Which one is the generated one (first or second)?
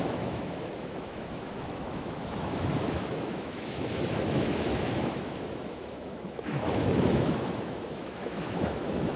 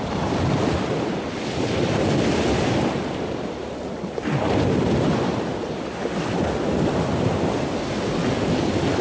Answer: first